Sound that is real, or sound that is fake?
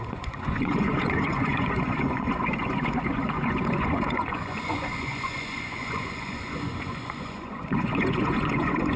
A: fake